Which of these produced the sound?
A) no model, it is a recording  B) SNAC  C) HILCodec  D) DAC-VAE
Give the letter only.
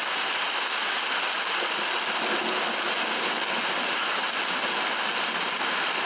A